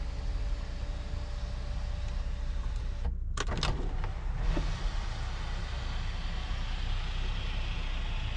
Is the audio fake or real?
real